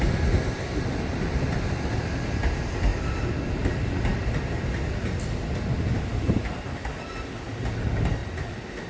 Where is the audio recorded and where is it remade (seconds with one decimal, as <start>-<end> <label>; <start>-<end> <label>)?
0.0-8.9 recorded